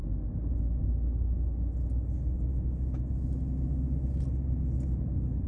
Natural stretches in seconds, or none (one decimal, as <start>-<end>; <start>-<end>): 0.0-5.5